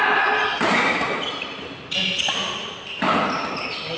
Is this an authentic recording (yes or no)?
yes